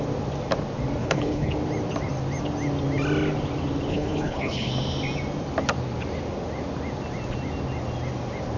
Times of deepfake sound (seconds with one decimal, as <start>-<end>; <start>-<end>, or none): 1.0-1.5; 3.9-4.7